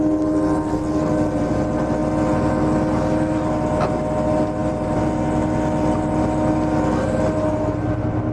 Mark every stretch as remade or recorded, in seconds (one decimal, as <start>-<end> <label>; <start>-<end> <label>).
0.0-8.3 recorded